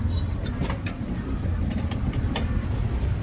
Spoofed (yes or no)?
no